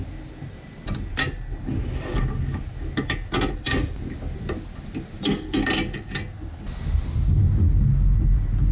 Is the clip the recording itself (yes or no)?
yes